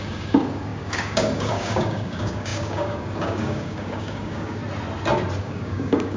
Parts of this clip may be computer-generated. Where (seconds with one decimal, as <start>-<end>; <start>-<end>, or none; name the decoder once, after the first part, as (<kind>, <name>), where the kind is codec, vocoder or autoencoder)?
0.0-4.6 (codec, DAC); 5.4-6.2